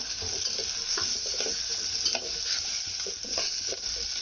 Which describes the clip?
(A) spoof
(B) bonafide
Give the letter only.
B